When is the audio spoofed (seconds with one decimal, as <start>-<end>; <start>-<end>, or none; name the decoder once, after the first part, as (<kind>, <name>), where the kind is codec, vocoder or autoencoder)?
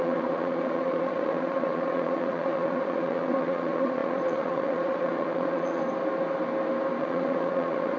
0.0-5.8 (vocoder, Vocos); 7.0-8.0